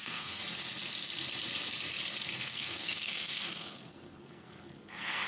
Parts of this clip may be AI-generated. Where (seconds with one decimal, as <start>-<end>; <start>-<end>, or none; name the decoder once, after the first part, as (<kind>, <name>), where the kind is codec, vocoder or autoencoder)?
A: 0.0-0.4 (codec, SNAC); 2.3-5.3